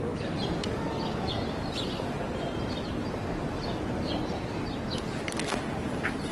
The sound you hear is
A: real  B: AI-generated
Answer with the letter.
A